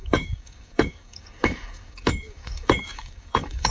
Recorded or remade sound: remade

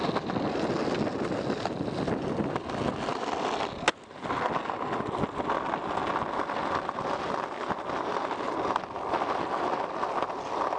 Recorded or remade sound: recorded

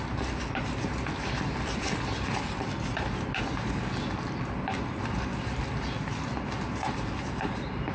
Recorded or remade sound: recorded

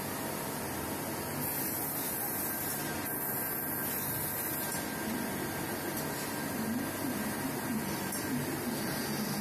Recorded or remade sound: recorded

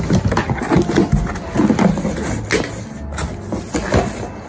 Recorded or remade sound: recorded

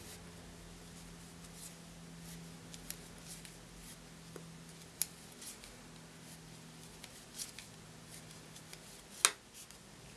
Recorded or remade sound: recorded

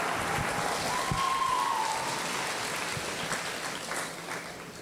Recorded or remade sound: recorded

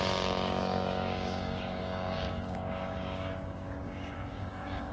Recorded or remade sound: remade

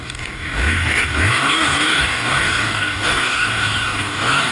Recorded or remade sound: remade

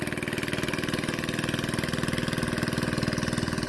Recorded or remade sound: recorded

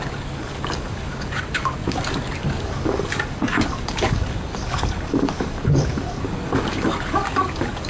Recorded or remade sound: remade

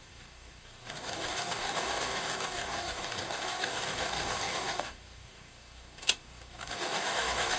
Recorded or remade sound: remade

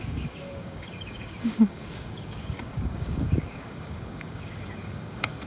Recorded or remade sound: remade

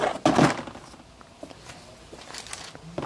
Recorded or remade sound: recorded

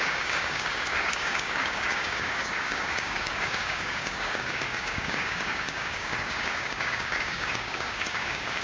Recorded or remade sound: remade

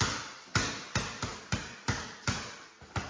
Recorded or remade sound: recorded